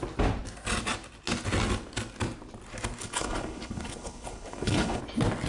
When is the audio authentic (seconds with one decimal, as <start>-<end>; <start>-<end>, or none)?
0.0-3.0; 5.0-5.5